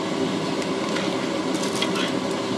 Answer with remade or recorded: recorded